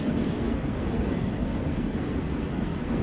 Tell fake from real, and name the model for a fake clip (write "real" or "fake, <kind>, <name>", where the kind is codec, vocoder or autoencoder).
fake, codec, SNAC